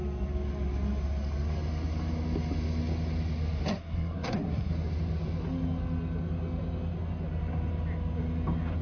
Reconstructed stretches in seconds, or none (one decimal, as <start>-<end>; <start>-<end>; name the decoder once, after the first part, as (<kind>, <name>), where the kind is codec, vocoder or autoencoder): 3.7-4.7 (codec, SNAC)